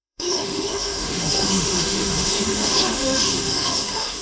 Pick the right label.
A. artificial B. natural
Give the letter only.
A